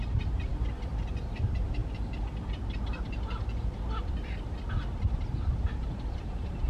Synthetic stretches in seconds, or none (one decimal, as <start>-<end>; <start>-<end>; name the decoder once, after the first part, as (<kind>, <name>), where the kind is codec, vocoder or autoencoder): 0.0-0.5 (vocoder, BigVGAN v2); 1.1-1.8; 5.7-6.7